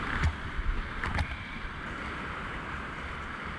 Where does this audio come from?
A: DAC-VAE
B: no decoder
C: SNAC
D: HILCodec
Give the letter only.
B